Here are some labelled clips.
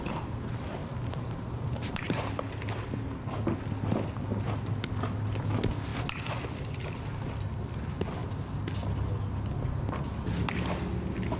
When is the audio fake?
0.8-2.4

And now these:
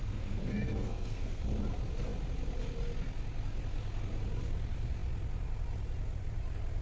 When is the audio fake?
0.0-1.4

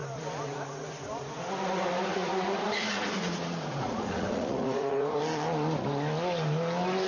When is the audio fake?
2.1-5.2